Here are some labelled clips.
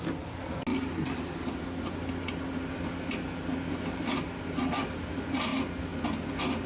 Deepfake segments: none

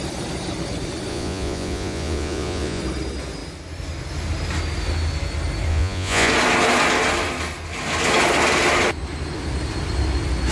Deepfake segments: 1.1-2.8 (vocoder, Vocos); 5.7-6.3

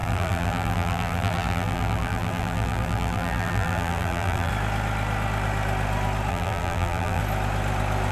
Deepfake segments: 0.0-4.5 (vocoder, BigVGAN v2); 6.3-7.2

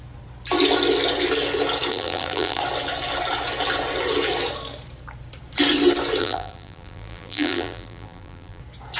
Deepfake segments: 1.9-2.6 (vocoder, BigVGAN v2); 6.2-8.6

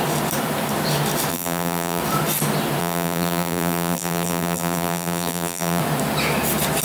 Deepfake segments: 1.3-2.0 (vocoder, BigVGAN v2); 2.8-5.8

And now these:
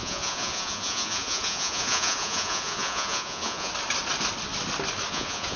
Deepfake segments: 0.0-3.7 (vocoder, Vocos); 5.1-5.6

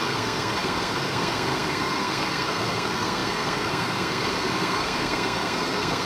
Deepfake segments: 0.0-6.1 (codec, SNAC)

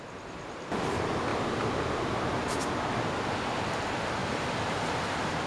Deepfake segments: 0.0-1.3 (vocoder, BigVGAN v2); 3.6-5.5